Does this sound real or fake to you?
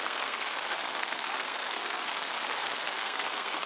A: fake